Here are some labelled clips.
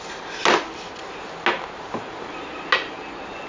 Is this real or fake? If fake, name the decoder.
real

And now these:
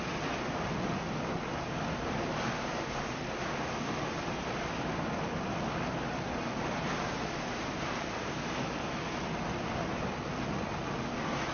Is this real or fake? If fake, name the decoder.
real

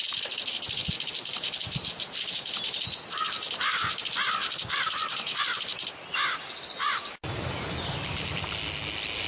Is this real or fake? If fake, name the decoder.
real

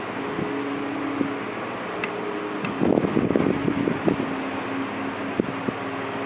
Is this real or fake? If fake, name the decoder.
real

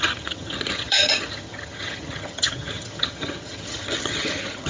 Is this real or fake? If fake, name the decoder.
fake, vocoder, HiFi-GAN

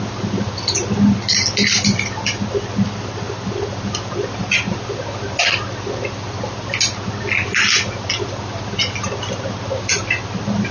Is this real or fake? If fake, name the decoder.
real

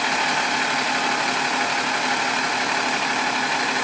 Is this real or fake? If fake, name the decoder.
real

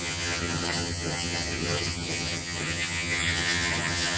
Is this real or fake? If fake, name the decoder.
fake, vocoder, HiFi-GAN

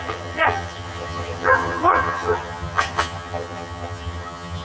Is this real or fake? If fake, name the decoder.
fake, vocoder, HiFi-GAN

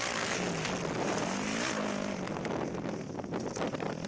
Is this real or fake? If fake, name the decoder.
real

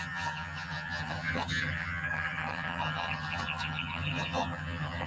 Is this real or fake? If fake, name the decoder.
fake, vocoder, HiFi-GAN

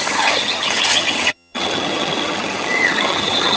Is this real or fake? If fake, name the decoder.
fake, vocoder, HiFi-GAN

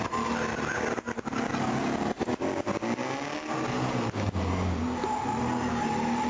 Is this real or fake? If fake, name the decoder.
real